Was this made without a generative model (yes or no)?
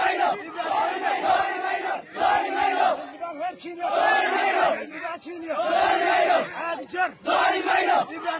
yes